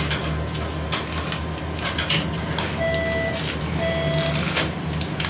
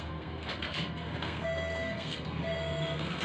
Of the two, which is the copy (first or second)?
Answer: second